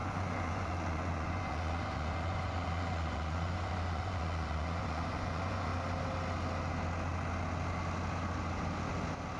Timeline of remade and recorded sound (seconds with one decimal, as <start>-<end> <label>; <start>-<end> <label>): 0.0-5.7 remade; 5.7-9.4 recorded